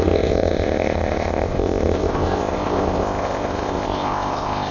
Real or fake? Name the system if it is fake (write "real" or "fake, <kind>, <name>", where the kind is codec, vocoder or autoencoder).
fake, codec, ZipCodec